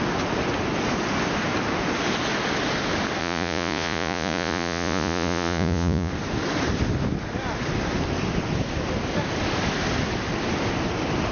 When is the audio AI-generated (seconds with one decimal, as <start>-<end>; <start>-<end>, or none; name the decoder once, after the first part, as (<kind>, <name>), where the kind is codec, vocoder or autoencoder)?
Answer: 3.2-6.1 (vocoder, Vocos)